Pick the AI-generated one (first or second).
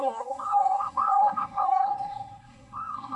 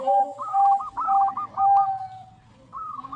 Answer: first